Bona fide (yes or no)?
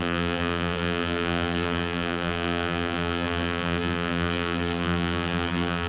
no